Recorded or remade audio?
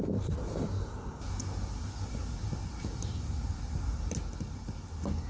recorded